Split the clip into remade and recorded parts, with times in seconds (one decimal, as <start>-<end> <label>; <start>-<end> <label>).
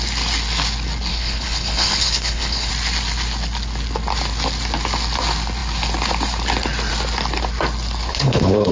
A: 0.0-1.1 recorded; 1.1-2.7 remade; 2.7-8.1 recorded; 8.1-8.7 remade